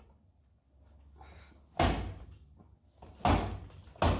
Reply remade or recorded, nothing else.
recorded